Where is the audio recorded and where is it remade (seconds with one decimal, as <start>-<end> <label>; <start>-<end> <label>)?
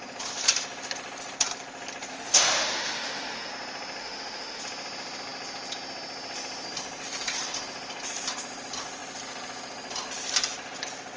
0.0-2.1 recorded; 2.1-3.5 remade; 3.5-4.0 recorded; 4.0-4.6 remade; 4.6-11.2 recorded